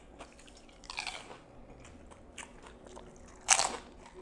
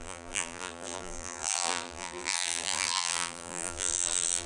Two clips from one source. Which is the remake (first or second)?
second